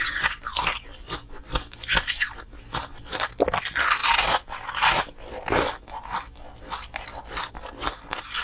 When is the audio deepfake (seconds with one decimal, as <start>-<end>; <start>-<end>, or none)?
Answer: none